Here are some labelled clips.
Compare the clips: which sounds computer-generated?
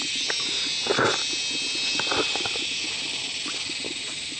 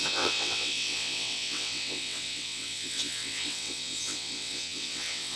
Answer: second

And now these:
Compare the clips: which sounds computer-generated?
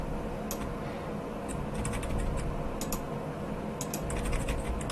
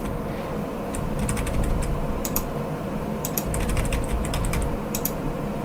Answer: second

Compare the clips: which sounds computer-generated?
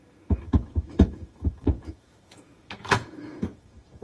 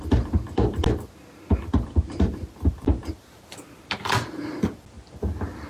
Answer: first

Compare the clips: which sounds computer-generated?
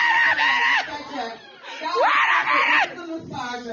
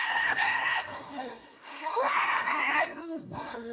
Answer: second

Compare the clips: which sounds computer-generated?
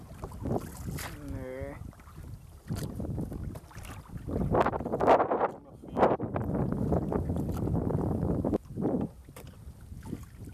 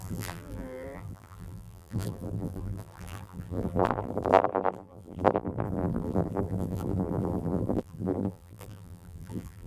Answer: second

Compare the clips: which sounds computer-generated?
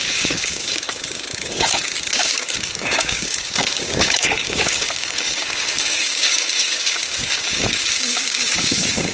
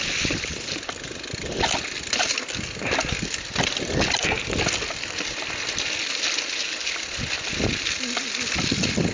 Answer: first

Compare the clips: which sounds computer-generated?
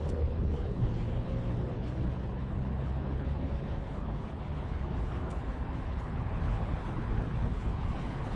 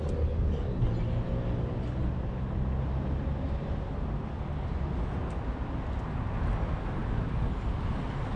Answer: first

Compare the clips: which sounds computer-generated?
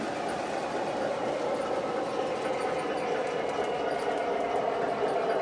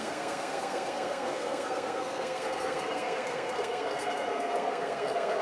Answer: second